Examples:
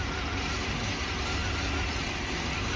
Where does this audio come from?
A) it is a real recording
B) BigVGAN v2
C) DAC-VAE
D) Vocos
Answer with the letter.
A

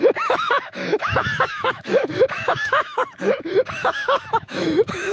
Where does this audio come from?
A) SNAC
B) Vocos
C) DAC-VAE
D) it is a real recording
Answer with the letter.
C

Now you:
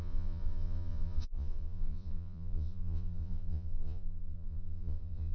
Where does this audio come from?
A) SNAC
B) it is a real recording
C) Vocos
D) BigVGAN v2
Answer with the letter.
C